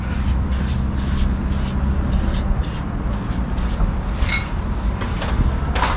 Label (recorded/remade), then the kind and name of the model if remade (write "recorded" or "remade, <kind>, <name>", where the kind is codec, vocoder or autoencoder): recorded